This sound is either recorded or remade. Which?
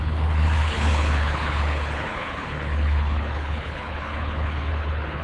remade